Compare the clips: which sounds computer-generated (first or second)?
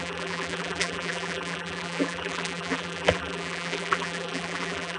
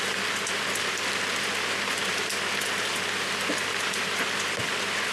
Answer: first